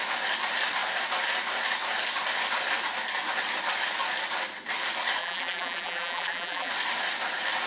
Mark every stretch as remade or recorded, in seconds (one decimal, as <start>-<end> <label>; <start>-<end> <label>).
0.0-5.2 recorded; 5.2-6.7 remade; 6.7-7.7 recorded